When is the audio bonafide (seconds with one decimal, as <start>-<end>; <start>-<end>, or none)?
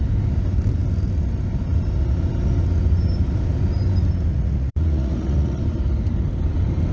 0.0-4.3; 5.6-6.9